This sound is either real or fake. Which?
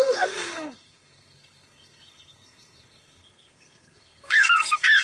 fake